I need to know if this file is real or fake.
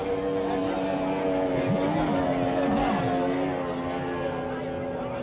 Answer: real